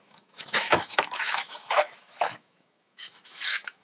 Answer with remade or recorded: remade